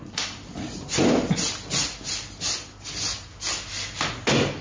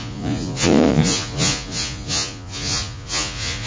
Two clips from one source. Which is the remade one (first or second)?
second